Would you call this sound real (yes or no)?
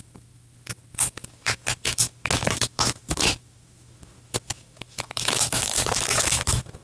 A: no